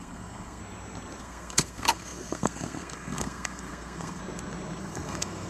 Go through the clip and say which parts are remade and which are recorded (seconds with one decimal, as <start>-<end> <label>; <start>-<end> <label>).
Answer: 0.0-0.6 remade; 0.6-1.2 recorded; 1.2-4.2 remade; 4.2-4.8 recorded; 4.8-5.5 remade